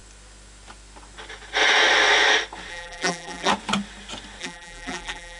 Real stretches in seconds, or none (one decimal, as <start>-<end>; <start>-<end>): 0.0-2.7; 3.5-4.4